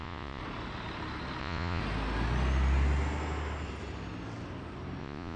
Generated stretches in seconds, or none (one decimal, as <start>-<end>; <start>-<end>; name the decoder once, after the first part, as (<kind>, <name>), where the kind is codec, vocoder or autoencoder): 0.0-0.4 (vocoder, Vocos); 1.4-1.8; 5.0-5.4